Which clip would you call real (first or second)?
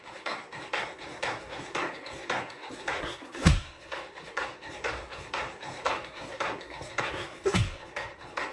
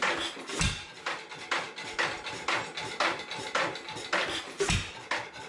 second